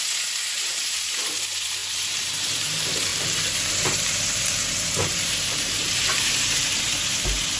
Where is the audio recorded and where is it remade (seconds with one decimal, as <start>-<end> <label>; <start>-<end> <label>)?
0.0-3.1 remade; 3.1-3.7 recorded; 3.7-7.6 remade